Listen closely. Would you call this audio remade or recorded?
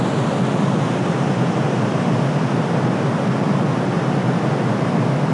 recorded